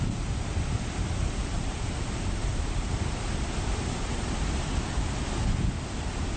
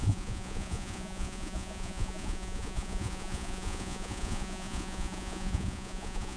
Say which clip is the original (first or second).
first